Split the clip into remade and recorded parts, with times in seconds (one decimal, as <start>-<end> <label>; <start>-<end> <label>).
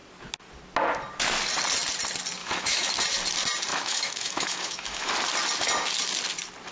0.0-2.4 recorded; 2.4-2.9 remade; 2.9-3.7 recorded; 3.7-5.1 remade; 5.1-6.7 recorded